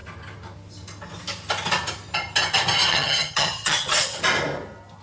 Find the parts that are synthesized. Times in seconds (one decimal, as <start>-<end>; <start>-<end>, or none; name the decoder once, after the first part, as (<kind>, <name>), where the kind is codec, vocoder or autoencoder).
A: 2.9-4.2 (vocoder, HiFi-GAN)